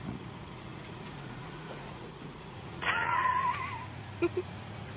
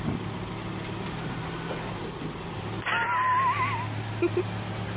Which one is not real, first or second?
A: first